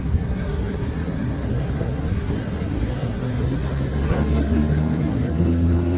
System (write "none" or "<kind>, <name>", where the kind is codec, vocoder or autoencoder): codec, SNAC